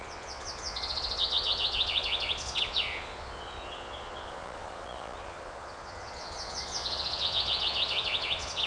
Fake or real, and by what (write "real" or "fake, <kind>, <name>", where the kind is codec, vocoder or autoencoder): fake, vocoder, Vocos